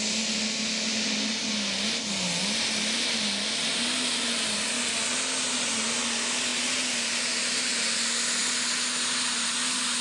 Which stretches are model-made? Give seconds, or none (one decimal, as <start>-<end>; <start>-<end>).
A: none